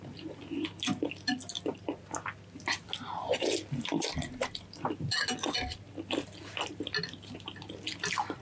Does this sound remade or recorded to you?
recorded